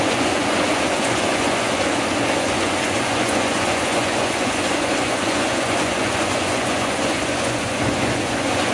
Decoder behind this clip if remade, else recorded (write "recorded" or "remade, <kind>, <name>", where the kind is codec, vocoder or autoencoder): remade, vocoder, Vocos